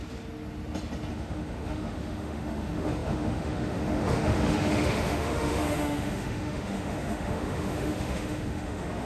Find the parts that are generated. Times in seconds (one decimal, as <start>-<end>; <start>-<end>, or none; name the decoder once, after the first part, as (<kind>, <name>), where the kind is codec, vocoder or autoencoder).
1.1-9.1 (autoencoder, DAC-VAE)